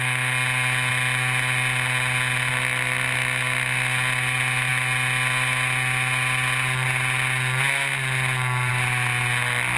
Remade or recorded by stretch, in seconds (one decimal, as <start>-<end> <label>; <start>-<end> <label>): 0.0-9.8 recorded